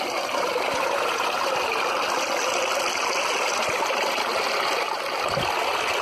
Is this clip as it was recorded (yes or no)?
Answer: yes